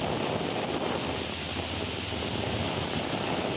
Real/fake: real